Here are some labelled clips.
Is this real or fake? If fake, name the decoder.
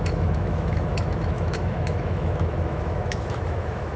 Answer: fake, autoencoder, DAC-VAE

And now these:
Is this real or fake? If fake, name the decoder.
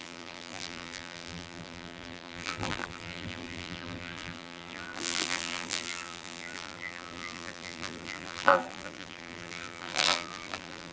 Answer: fake, vocoder, BigVGAN v2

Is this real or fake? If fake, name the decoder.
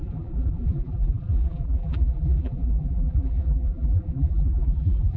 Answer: fake, vocoder, BigVGAN v2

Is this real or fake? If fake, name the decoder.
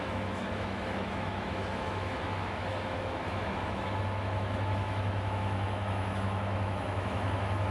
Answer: fake, autoencoder, DAC-VAE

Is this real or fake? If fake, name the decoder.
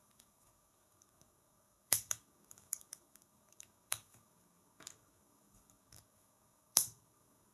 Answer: fake, codec, DAC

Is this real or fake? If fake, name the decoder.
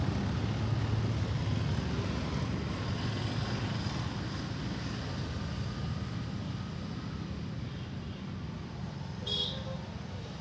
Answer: real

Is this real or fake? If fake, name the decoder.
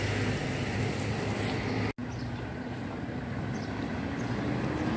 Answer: real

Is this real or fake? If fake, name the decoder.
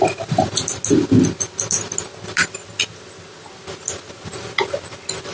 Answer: real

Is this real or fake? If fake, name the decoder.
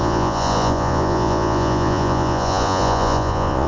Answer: fake, vocoder, Vocos